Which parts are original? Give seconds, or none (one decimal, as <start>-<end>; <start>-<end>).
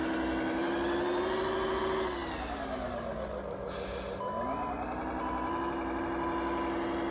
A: 0.0-7.1